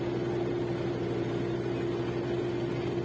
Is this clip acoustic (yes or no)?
yes